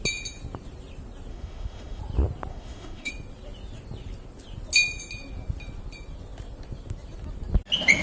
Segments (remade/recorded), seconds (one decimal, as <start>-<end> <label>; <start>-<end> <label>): 0.0-1.3 recorded; 1.3-2.0 remade; 2.0-2.5 recorded; 2.5-3.1 remade; 3.1-8.0 recorded